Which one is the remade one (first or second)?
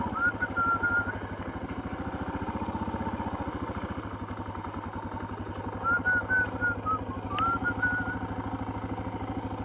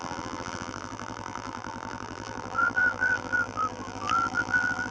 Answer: second